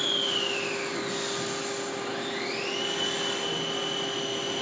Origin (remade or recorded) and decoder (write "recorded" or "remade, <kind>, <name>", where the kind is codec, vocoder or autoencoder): recorded